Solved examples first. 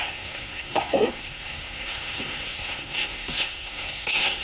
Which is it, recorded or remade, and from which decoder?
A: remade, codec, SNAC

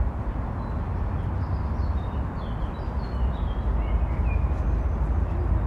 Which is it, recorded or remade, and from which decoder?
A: recorded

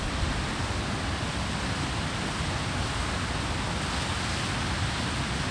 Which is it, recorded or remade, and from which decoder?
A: recorded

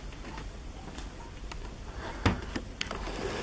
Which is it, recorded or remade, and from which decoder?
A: recorded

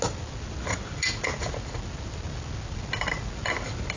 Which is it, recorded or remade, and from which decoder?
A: recorded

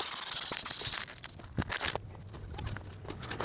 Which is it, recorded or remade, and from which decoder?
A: recorded